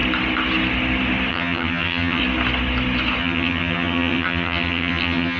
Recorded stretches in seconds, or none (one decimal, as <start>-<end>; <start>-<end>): 0.0-1.3; 2.2-3.2

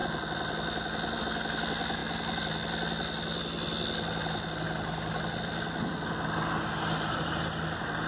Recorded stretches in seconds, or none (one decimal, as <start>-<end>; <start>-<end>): 0.0-8.1

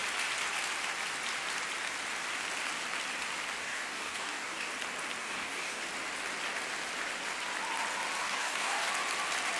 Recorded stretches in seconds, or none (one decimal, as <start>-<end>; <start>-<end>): 0.0-3.6; 4.7-5.2; 5.8-8.2; 8.9-9.6

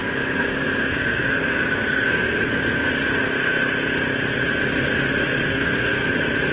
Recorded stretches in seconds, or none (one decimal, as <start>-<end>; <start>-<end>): 2.9-5.5; 6.1-6.5

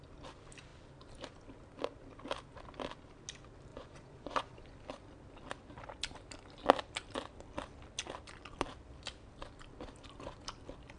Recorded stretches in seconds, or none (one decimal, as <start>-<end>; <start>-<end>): 0.0-3.7; 4.6-11.0

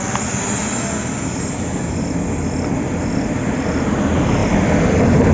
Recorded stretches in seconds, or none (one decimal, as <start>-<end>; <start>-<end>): 0.0-5.3